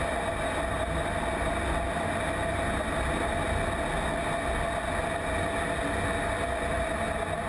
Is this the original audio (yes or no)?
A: yes